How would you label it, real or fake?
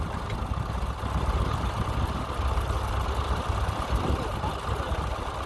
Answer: real